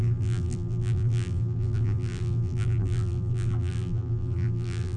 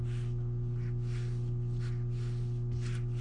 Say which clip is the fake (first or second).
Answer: first